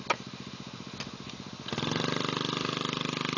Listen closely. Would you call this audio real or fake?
real